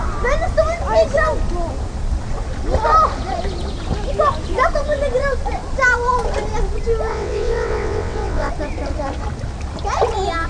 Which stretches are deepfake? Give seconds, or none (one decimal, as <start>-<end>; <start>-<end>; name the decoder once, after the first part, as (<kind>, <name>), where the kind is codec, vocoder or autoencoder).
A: 7.1-8.5 (vocoder, WaveNeXt)